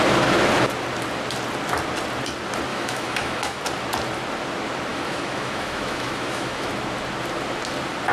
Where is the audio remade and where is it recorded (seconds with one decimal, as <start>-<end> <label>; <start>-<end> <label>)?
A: 0.0-2.7 recorded; 2.7-3.6 remade; 3.6-4.9 recorded; 4.9-6.7 remade; 6.7-8.1 recorded